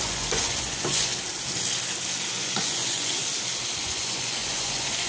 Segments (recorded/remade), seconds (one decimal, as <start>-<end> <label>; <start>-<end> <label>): 0.0-1.1 remade; 1.1-2.3 recorded; 2.3-3.2 remade; 3.2-3.8 recorded; 3.8-5.1 remade